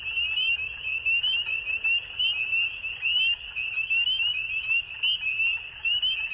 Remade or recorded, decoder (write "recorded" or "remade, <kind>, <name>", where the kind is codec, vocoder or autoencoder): recorded